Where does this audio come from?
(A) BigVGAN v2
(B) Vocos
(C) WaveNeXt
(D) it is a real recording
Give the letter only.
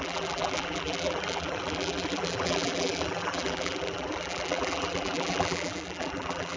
A